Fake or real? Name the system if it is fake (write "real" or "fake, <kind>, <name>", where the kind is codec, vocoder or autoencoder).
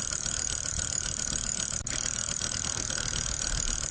real